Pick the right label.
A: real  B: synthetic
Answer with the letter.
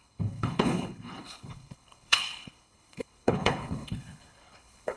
B